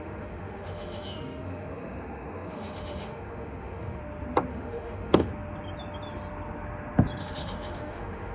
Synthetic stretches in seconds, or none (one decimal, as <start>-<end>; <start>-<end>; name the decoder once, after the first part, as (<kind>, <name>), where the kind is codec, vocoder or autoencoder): 0.0-4.0 (autoencoder, DAC-VAE); 4.5-5.3; 7.2-8.3